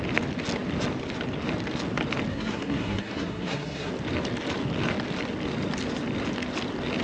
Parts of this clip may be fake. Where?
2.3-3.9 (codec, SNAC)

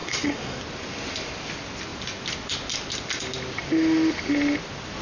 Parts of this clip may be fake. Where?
0.0-0.6 (codec, SNAC)

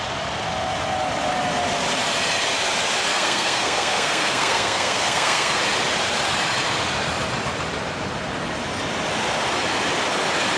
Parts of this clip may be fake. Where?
3.1-5.6 (codec, SNAC)

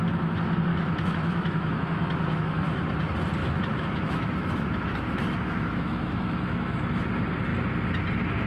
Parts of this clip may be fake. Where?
0.7-2.8 (autoencoder, DAC-VAE); 3.4-7.0